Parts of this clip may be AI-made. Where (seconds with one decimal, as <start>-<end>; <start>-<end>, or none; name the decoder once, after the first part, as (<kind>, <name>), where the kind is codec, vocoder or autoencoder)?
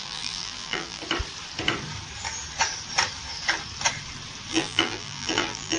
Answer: 0.0-1.0 (vocoder, BigVGAN v2); 4.5-5.8